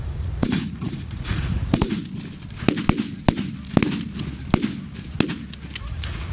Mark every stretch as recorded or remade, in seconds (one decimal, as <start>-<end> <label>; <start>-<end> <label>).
0.0-2.0 remade; 2.0-5.8 recorded; 5.8-6.3 remade